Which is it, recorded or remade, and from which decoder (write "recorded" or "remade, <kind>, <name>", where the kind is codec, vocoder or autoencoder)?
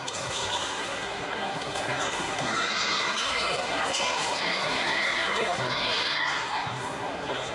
remade, codec, SNAC